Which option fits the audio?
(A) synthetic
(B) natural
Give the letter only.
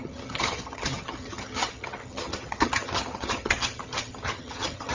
A